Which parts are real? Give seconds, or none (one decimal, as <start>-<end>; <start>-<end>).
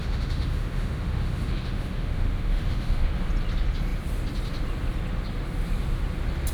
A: 3.3-6.5